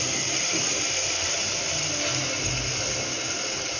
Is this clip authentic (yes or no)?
yes